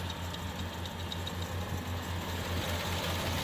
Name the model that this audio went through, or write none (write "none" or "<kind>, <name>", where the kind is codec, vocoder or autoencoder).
none